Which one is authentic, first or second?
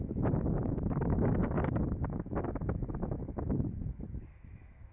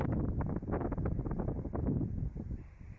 second